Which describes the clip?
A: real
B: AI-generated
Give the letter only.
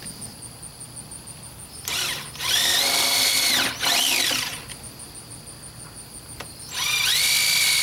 A